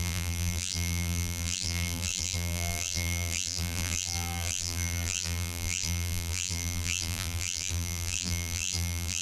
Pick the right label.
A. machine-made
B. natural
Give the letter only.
A